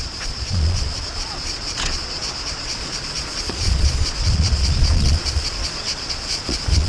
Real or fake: fake